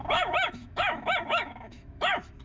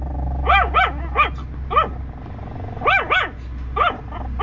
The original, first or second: second